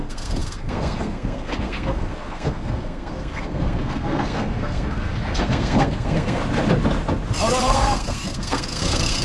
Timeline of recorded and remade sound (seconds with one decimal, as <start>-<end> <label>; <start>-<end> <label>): 0.0-6.4 remade; 6.4-7.6 recorded; 7.6-9.2 remade